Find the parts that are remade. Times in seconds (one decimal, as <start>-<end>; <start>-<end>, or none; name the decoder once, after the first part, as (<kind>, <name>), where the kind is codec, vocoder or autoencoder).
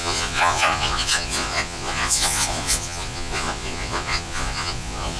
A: 0.0-5.2 (vocoder, Vocos)